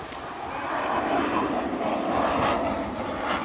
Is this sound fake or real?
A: real